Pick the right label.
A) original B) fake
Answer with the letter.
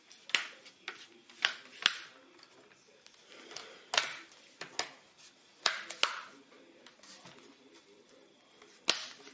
A